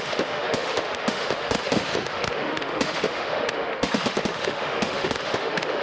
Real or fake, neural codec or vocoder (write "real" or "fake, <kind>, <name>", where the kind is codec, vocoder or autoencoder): fake, autoencoder, DAC-VAE